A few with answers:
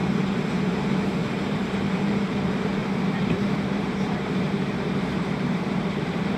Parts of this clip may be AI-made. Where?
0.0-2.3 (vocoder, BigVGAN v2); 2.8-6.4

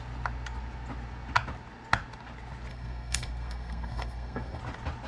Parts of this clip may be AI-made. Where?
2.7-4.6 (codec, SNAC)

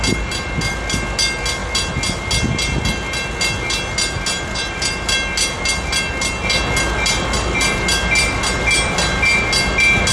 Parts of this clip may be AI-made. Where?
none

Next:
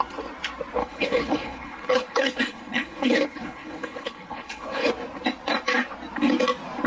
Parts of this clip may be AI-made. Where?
0.8-4.9 (codec, HILCodec)

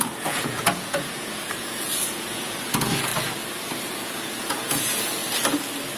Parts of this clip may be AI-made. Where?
0.0-3.1 (vocoder, Vocos); 3.8-5.2

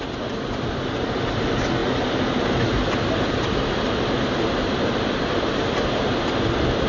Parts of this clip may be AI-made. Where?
none

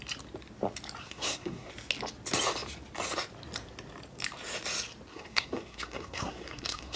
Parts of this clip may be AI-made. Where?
1.0-1.7 (codec, SNAC); 5.1-7.0